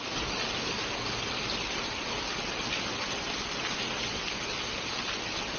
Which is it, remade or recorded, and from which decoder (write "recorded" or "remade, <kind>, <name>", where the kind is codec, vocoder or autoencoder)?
recorded